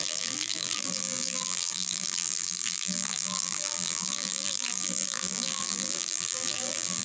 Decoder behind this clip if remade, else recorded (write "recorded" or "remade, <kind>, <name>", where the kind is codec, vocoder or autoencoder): remade, vocoder, BigVGAN v2